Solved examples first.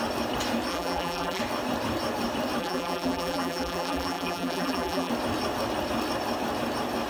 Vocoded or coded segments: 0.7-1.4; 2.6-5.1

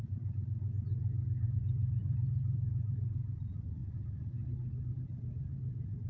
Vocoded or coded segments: 0.0-0.9; 1.4-3.8; 4.9-6.1

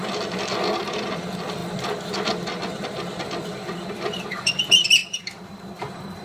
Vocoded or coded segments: 0.8-6.2

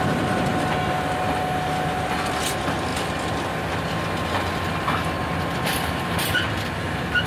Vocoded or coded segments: none